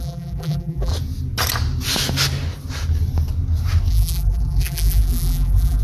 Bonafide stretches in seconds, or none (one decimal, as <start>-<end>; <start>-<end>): 0.9-3.9